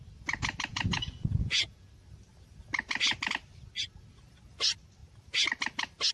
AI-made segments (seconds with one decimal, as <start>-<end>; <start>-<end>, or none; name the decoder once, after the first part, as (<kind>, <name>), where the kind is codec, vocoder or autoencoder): 0.7-1.9 (vocoder, Vocos)